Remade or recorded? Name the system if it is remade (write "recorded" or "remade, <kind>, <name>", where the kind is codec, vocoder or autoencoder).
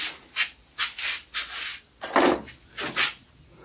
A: recorded